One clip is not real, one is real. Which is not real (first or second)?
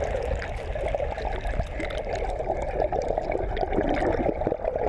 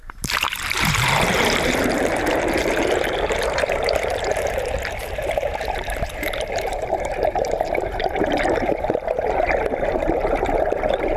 second